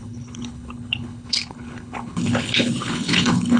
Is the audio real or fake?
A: fake